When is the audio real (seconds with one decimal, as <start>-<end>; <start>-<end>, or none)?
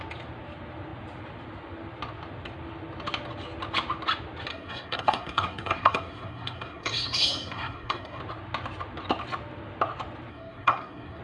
0.0-4.5; 8.2-10.3